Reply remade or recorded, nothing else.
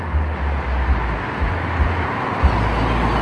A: recorded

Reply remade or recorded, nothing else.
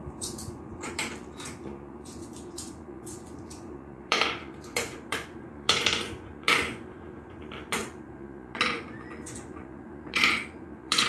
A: remade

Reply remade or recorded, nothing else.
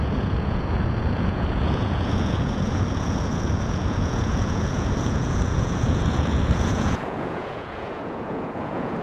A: remade